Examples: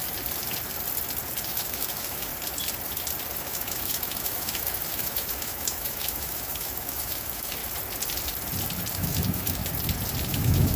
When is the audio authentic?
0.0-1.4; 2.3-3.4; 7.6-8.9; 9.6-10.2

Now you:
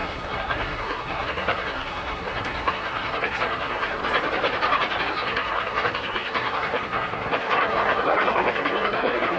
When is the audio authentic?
4.0-5.0